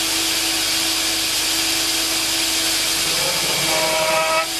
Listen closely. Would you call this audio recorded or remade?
recorded